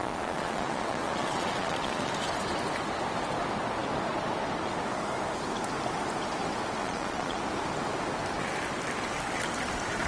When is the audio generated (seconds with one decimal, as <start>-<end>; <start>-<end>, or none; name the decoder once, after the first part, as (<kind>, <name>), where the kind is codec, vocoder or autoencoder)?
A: 0.0-2.1 (vocoder, Vocos); 6.8-7.4